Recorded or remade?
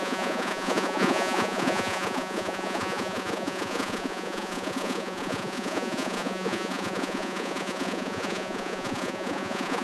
remade